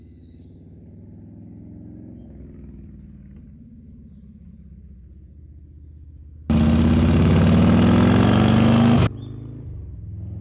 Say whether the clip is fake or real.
real